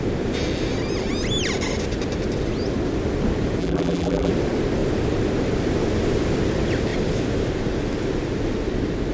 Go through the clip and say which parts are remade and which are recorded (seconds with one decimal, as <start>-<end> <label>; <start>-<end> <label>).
0.0-3.6 recorded; 3.6-4.3 remade; 4.3-9.1 recorded

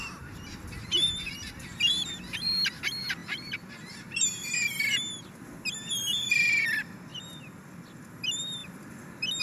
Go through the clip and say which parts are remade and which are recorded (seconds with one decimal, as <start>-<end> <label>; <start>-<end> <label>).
0.0-9.4 remade